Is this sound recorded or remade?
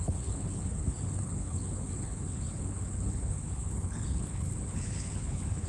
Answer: remade